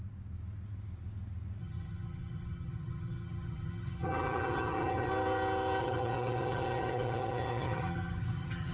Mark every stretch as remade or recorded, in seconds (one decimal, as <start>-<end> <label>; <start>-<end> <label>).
0.0-1.6 recorded; 1.6-5.1 remade; 5.1-5.8 recorded; 5.8-8.7 remade